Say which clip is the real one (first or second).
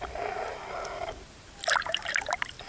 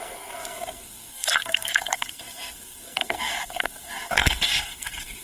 first